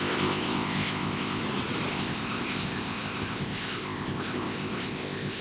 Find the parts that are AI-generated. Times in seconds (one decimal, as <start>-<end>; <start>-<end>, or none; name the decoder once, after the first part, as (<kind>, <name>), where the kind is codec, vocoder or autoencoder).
0.0-1.4 (codec, ZipCodec); 1.9-5.4